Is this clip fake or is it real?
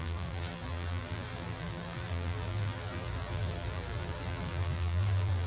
fake